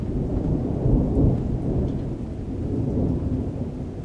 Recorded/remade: recorded